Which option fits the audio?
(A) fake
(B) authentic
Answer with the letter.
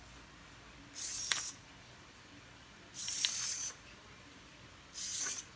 B